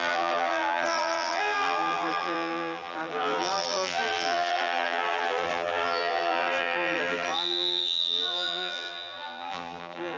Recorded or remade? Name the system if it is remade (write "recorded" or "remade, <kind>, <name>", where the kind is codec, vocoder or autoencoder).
remade, vocoder, BigVGAN v2